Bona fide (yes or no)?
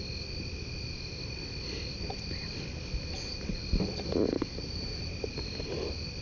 yes